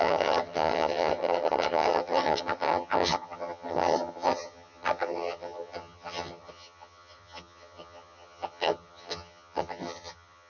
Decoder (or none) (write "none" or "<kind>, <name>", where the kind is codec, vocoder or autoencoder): vocoder, HiFi-GAN